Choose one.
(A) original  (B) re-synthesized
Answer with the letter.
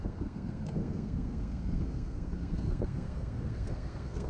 B